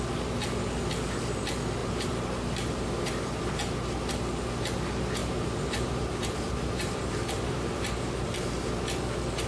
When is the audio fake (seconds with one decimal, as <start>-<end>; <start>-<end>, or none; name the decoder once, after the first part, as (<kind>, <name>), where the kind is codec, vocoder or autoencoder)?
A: 1.8-3.4 (vocoder, BigVGAN v2); 5.2-8.8